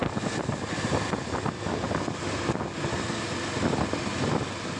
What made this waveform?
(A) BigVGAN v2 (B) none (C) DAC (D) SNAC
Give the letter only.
B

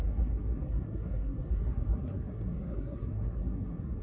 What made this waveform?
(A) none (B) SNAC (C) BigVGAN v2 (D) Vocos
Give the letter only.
B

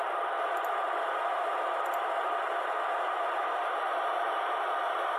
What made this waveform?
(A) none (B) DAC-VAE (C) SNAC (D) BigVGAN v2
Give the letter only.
A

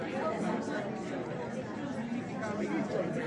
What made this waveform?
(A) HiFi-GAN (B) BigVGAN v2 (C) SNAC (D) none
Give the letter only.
D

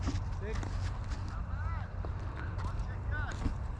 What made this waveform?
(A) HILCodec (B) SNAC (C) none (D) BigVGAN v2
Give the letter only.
C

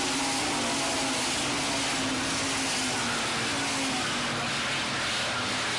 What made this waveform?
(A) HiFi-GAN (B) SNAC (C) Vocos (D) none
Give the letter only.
D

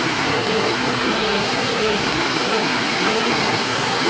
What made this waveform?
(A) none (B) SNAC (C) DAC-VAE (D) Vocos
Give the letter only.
B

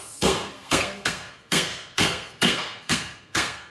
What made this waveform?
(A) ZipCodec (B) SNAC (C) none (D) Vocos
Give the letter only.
B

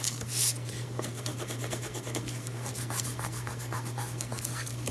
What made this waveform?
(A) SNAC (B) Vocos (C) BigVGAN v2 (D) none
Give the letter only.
A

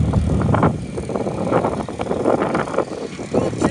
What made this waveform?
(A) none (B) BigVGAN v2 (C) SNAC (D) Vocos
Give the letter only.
A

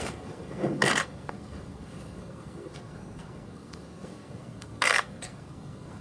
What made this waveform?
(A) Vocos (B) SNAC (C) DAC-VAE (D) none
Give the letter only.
B